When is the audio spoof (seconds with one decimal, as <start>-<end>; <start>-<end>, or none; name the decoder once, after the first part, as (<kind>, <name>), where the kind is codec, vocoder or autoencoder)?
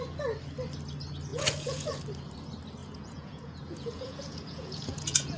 1.3-2.0 (vocoder, Vocos); 2.8-5.4